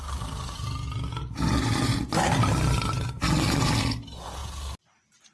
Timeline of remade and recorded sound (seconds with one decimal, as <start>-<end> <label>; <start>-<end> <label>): 0.0-5.3 recorded